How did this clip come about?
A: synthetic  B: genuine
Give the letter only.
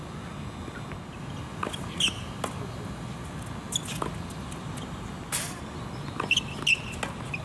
B